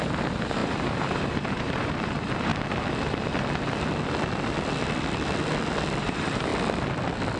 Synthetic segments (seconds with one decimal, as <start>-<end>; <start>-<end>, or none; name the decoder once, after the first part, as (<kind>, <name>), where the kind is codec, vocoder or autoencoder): 0.0-2.5 (vocoder, BigVGAN v2); 6.0-6.5